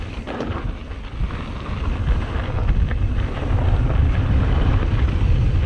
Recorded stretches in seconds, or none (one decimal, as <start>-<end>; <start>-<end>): 0.0-5.7